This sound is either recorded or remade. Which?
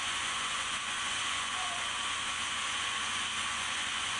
remade